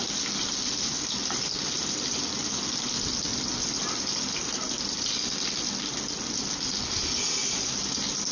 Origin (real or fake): real